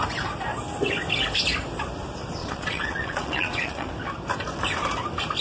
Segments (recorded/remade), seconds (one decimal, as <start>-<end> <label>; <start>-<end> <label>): 0.0-2.4 recorded; 2.4-3.9 remade; 3.9-5.4 recorded